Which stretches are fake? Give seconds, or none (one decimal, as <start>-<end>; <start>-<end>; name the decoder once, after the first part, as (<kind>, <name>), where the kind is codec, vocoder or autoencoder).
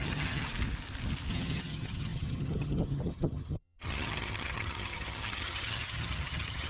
0.0-0.5 (vocoder, HiFi-GAN); 1.3-6.7